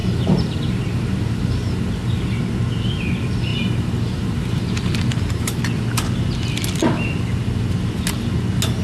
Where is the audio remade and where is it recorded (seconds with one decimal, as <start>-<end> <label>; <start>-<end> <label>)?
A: 0.0-2.4 remade; 2.4-3.5 recorded; 3.5-5.6 remade; 5.6-8.8 recorded

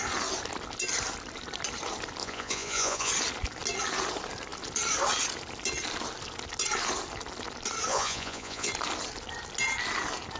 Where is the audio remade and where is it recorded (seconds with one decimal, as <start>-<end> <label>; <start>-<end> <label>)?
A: 0.0-2.2 recorded; 2.2-3.1 remade; 3.1-7.9 recorded; 7.9-8.7 remade; 8.7-10.4 recorded

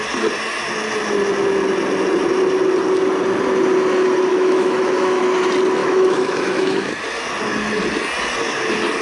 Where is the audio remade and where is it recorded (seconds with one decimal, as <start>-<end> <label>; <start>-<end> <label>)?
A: 0.0-4.3 recorded; 4.3-5.2 remade; 5.2-5.8 recorded; 5.8-6.9 remade; 6.9-9.0 recorded

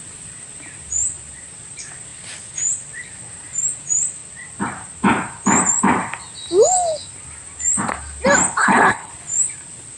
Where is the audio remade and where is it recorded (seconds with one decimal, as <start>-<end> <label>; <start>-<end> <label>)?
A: 0.0-8.6 recorded; 8.6-9.1 remade; 9.1-10.0 recorded

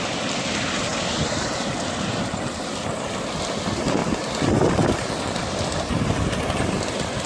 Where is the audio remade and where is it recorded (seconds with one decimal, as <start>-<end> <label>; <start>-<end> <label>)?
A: 0.0-4.0 recorded; 4.0-5.5 remade; 5.5-7.3 recorded

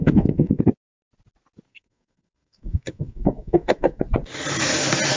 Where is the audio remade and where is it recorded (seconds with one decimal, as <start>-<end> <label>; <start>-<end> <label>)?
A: 0.0-0.6 remade; 0.6-1.7 recorded; 1.7-4.0 remade; 4.0-5.2 recorded